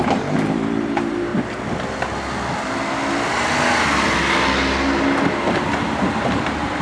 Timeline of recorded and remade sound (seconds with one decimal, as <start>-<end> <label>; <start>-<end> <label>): 0.0-1.3 remade; 1.3-5.4 recorded; 5.4-6.8 remade